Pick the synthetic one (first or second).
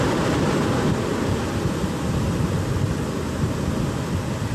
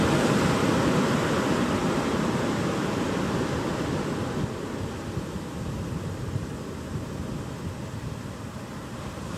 first